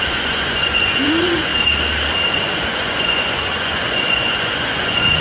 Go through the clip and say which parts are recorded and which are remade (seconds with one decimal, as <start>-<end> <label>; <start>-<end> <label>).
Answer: 0.0-1.5 remade; 1.5-2.3 recorded; 2.3-5.2 remade